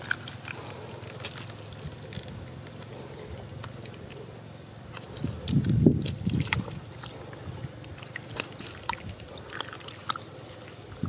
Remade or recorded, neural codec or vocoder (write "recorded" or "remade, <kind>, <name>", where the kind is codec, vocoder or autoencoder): recorded